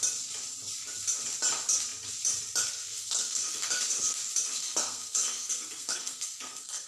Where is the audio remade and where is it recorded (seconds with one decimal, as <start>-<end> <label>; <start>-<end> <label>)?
0.0-2.8 recorded; 2.8-3.8 remade; 3.8-4.6 recorded; 4.6-6.9 remade